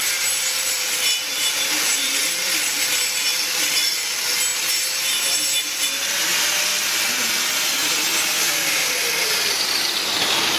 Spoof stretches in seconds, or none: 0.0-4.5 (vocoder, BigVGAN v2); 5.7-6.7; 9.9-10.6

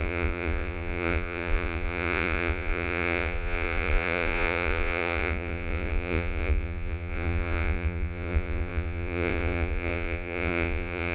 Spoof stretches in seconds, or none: 0.0-11.1 (vocoder, Vocos)

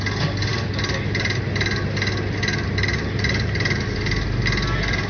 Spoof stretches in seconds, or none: none